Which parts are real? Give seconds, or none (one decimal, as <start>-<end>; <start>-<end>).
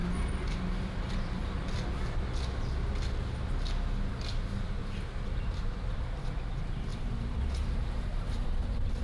0.0-4.8; 6.0-6.9